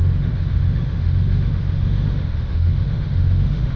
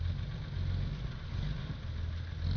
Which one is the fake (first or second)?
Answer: first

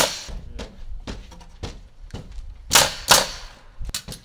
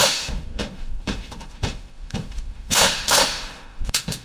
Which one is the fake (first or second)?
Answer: second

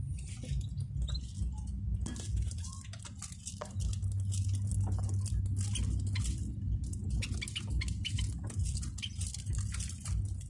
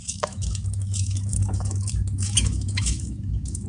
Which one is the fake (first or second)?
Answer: second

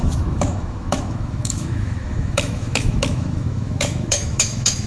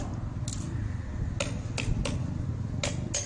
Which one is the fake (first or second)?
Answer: first